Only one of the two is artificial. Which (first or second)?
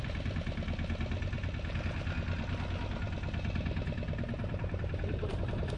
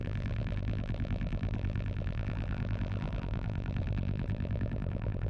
second